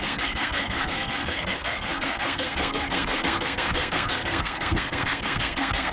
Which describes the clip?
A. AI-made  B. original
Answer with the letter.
A